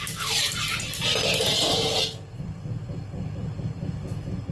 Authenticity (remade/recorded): recorded